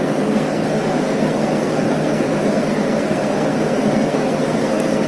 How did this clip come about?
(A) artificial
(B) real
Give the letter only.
A